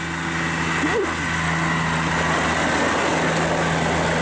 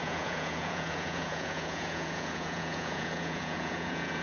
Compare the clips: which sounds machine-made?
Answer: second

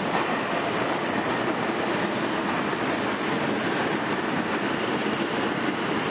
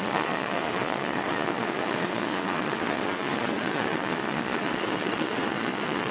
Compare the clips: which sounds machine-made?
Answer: second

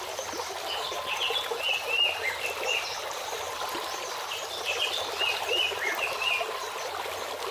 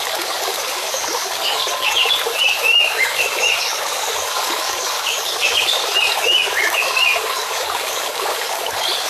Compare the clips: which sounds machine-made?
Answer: second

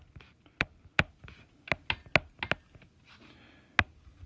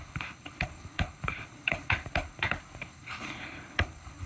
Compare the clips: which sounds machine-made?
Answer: second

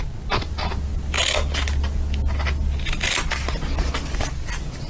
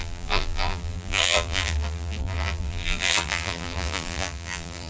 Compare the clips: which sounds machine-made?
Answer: second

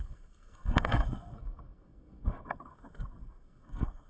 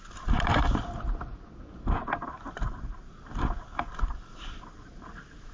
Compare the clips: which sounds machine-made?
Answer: first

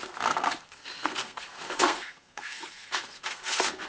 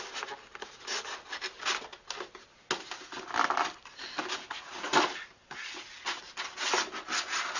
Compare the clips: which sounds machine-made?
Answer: first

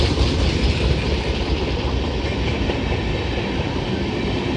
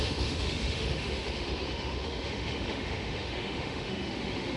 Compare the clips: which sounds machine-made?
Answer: second